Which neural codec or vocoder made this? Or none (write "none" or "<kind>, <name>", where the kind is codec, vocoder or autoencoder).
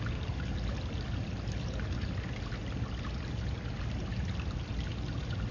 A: none